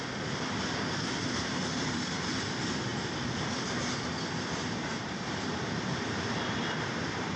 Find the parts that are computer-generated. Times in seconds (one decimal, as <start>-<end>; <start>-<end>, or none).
none